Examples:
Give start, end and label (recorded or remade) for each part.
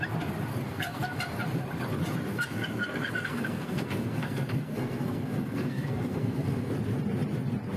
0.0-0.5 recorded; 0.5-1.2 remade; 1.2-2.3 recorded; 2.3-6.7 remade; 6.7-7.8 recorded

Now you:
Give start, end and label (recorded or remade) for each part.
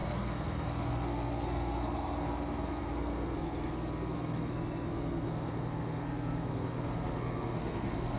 0.0-8.2 remade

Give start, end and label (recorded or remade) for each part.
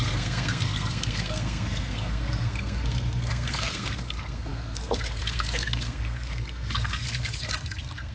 0.0-8.1 remade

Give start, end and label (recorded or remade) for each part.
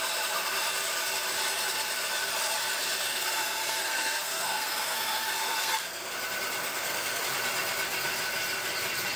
0.0-3.1 recorded; 3.1-6.1 remade; 6.1-6.6 recorded; 6.6-7.2 remade; 7.2-9.2 recorded